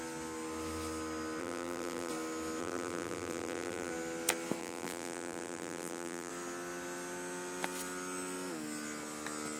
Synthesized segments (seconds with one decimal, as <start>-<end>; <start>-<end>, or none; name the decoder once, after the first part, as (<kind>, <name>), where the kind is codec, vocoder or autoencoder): 1.4-2.1 (vocoder, BigVGAN v2); 2.6-3.9; 4.6-6.3